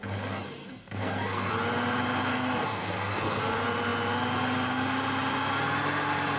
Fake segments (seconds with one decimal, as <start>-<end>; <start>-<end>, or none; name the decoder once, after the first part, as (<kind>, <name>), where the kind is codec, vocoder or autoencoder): 0.6-1.5 (codec, SNAC); 2.3-3.4